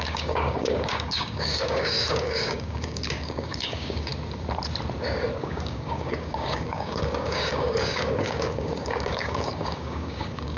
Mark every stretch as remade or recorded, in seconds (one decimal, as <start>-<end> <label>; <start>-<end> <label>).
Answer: 0.0-4.1 remade; 4.1-5.4 recorded; 5.4-10.6 remade